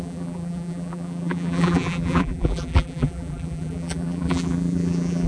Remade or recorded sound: remade